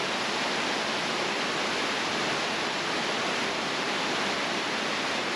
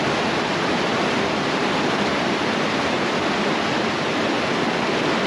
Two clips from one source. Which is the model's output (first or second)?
second